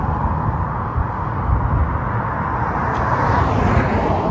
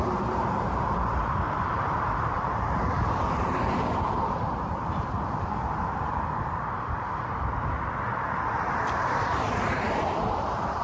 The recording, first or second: first